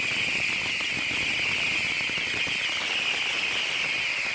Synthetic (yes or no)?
no